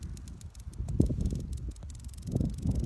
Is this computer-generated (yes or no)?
no